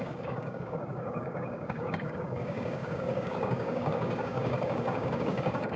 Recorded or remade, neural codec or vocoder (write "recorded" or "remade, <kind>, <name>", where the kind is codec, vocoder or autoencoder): remade, codec, DAC